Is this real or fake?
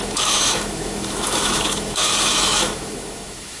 fake